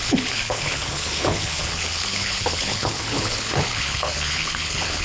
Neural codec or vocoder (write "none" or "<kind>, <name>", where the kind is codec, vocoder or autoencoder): codec, HILCodec